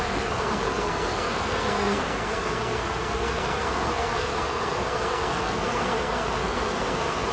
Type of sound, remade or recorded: remade